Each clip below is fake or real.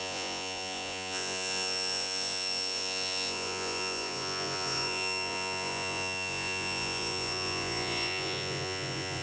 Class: fake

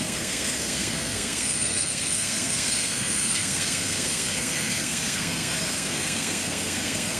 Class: fake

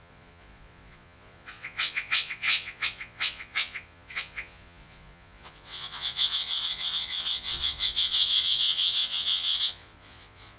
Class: fake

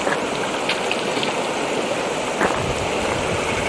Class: real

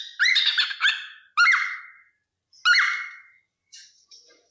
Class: real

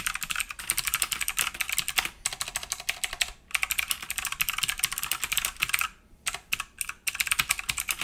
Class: fake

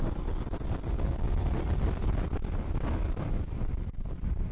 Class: real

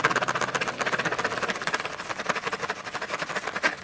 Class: real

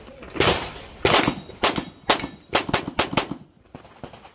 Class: real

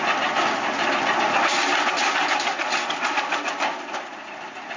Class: real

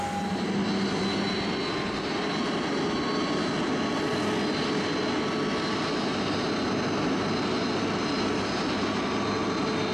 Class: real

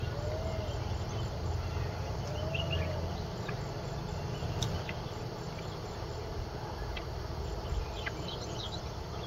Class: real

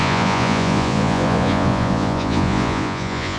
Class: fake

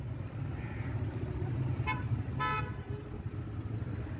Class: real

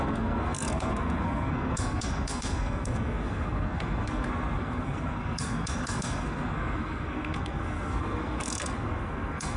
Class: fake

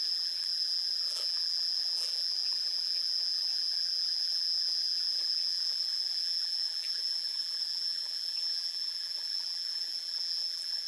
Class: fake